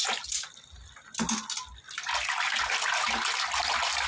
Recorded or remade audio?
recorded